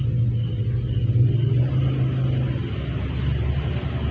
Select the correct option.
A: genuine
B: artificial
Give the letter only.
A